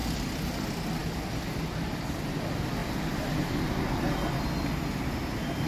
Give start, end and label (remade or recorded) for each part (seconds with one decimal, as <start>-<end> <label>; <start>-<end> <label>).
0.0-5.7 recorded